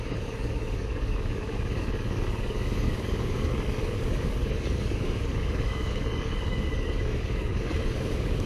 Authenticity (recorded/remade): remade